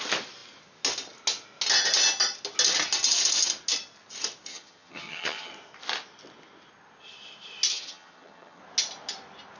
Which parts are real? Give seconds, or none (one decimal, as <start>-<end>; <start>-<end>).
0.0-4.5; 5.5-7.7; 8.6-9.6

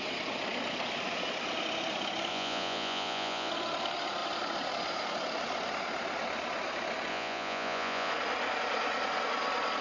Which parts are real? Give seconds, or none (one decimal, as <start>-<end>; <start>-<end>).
0.0-2.3; 3.5-7.1; 8.1-9.8

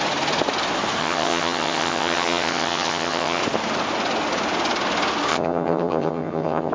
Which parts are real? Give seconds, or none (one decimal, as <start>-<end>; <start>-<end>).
0.0-1.0; 3.4-5.3

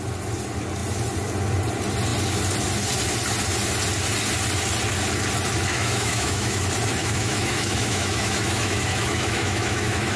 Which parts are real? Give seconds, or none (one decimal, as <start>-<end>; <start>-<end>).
0.0-5.7; 6.6-7.0

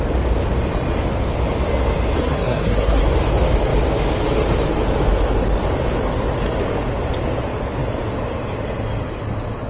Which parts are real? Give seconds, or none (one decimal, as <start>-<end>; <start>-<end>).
0.0-2.2; 3.0-9.7

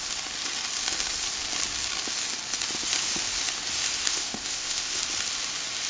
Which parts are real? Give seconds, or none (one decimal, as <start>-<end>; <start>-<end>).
0.0-4.1; 5.0-5.9